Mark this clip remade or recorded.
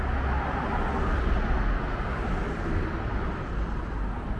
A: recorded